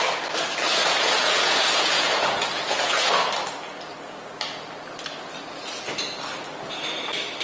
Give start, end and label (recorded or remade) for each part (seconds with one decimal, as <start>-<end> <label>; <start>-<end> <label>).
0.0-0.8 recorded; 0.8-3.1 remade; 3.1-7.4 recorded